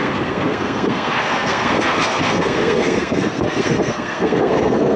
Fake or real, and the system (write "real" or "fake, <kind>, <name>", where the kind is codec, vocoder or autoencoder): fake, codec, SNAC